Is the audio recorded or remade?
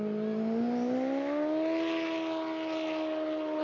recorded